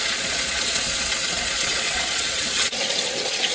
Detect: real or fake fake